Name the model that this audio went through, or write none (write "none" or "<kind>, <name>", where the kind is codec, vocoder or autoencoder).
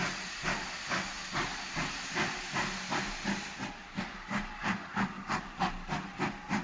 none